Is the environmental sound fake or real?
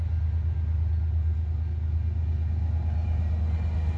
real